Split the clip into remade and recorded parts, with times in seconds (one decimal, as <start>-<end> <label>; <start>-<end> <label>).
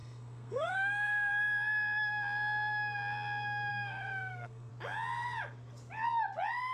0.0-1.3 remade; 1.3-3.7 recorded; 3.7-4.7 remade; 4.7-6.7 recorded